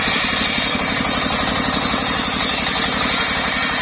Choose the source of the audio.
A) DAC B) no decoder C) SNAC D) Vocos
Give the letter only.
B